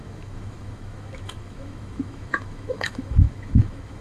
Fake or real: fake